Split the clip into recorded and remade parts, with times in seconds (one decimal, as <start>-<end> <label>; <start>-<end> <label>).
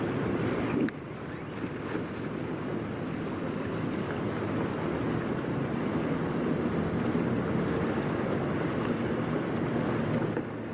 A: 0.0-4.7 remade; 4.7-6.9 recorded; 6.9-10.7 remade